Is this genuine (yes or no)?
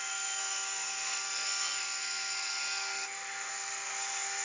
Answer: no